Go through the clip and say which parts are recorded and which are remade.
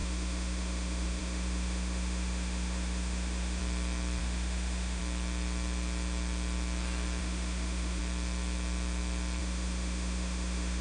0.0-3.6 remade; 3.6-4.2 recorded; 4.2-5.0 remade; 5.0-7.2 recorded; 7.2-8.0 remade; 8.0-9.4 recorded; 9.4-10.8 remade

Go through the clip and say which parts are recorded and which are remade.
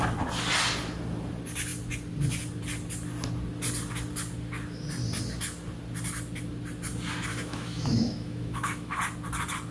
0.0-7.3 recorded; 7.3-9.0 remade; 9.0-9.7 recorded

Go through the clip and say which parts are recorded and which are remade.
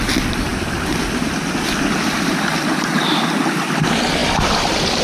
0.0-5.0 recorded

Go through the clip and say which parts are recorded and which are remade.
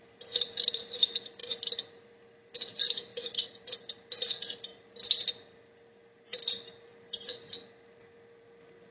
0.0-8.9 recorded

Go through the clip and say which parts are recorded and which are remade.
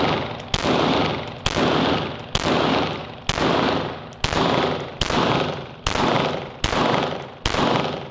0.0-8.1 recorded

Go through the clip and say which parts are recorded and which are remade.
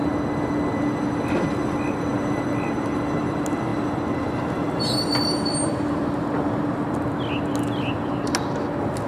0.0-9.1 recorded